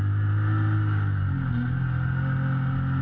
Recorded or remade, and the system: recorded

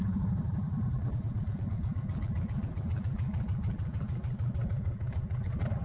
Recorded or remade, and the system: remade, vocoder, BigVGAN v2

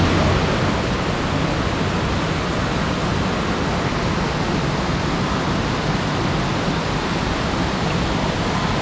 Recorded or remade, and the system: recorded